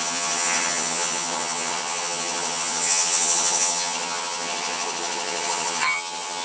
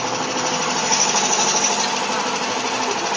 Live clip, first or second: second